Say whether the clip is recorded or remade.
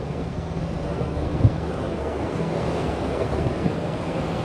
remade